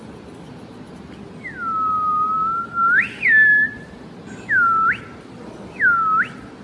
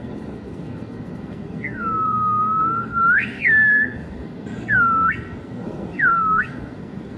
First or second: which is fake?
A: second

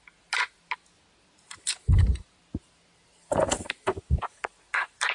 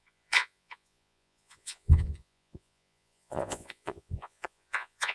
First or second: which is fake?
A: second